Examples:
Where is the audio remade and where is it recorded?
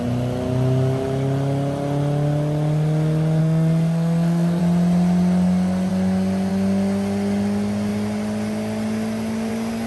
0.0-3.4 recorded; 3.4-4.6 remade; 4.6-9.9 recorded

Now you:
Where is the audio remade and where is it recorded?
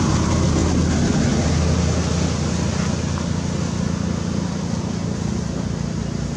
0.0-6.4 recorded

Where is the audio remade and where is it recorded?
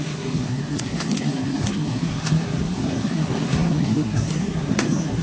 0.0-5.2 remade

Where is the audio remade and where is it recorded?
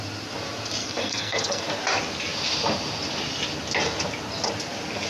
0.0-0.8 recorded; 0.8-1.6 remade; 1.6-5.1 recorded